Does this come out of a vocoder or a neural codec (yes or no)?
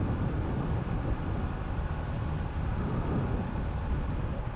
yes